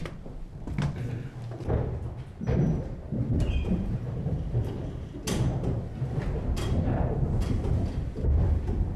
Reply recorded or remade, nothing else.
recorded